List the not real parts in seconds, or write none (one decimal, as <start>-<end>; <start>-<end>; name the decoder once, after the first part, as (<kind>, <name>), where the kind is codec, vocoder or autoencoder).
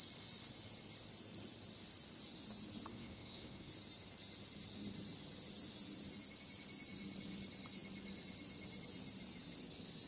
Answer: 2.9-3.7 (codec, SNAC)